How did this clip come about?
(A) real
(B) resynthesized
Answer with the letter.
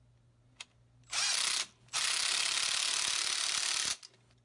A